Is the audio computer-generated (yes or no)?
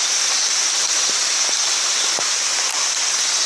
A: no